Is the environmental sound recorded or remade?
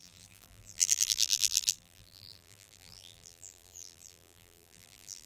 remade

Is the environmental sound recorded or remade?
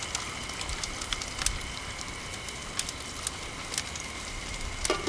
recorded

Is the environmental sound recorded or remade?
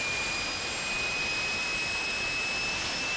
recorded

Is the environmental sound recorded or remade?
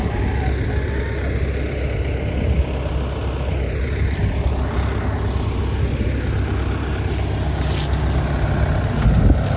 recorded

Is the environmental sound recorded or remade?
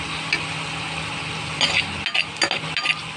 recorded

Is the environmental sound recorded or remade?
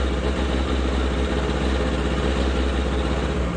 recorded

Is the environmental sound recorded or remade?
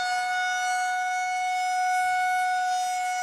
recorded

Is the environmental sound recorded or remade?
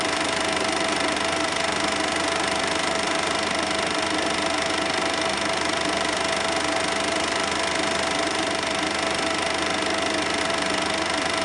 remade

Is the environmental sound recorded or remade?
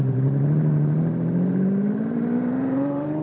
remade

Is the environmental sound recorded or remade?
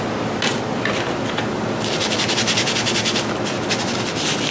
recorded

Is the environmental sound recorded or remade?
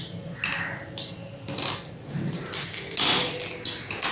recorded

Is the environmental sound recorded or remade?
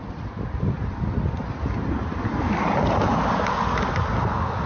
recorded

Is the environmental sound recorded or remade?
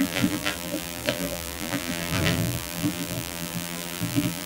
remade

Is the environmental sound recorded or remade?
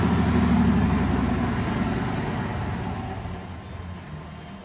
recorded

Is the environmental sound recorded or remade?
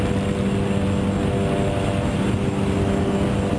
recorded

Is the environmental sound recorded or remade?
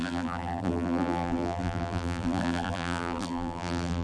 remade